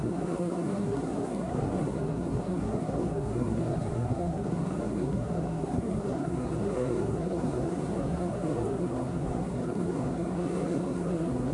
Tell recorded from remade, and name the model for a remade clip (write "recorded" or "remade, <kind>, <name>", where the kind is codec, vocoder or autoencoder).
remade, codec, SNAC